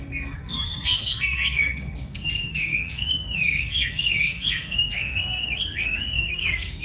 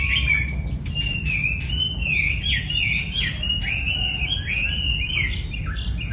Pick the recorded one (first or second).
second